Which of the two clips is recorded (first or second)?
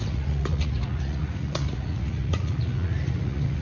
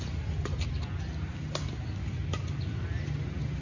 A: second